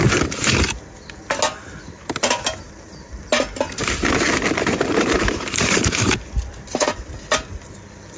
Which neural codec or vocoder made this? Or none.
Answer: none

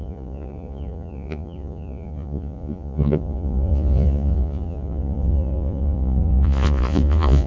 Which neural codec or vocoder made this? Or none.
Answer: vocoder, Vocos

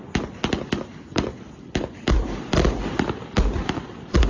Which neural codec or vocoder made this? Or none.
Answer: none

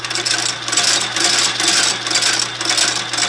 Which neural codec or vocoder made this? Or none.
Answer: none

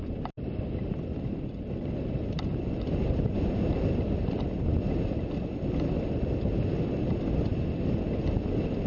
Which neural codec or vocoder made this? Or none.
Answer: none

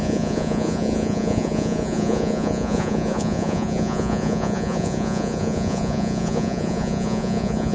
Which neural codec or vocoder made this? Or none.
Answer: vocoder, Vocos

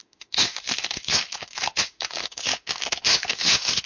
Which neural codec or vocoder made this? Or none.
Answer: autoencoder, DAC-VAE